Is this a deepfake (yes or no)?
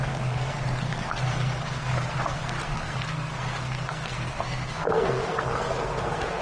yes